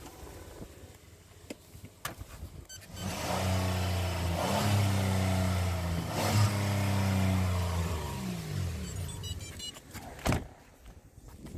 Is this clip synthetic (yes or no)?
no